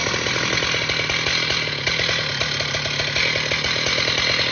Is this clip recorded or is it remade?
recorded